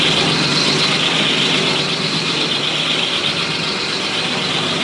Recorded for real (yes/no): yes